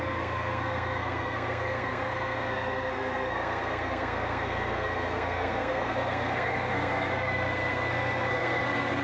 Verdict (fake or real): fake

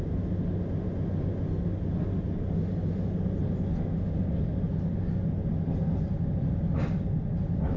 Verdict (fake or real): real